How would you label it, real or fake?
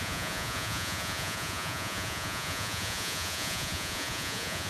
fake